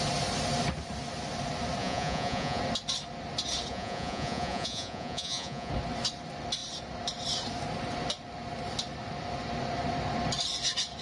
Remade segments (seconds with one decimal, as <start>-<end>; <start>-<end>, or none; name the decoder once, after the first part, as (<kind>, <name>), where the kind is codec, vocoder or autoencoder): 1.8-2.6 (vocoder, Vocos); 3.7-5.7